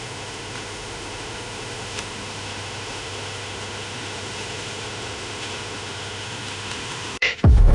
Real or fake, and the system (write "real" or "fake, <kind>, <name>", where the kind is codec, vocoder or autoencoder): fake, autoencoder, DAC-VAE